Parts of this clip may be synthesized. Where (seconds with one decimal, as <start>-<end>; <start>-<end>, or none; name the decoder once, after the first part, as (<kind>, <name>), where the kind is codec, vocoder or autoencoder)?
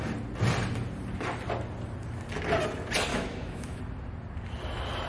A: 3.1-3.8 (autoencoder, DAC-VAE)